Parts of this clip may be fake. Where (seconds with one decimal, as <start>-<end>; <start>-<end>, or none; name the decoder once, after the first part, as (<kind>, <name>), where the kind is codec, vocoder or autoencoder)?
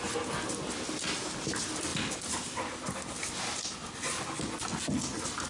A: none